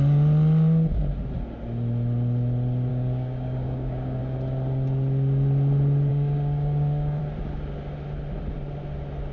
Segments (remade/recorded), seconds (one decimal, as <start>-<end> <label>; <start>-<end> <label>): 0.0-2.9 recorded; 2.9-4.2 remade; 4.2-6.1 recorded; 6.1-7.2 remade; 7.2-9.3 recorded